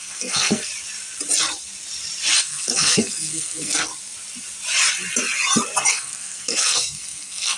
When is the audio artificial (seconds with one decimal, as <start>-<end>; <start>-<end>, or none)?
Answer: 0.0-0.7; 2.4-3.9; 5.9-7.6